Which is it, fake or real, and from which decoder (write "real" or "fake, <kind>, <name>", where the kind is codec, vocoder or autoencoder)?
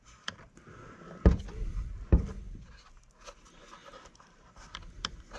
real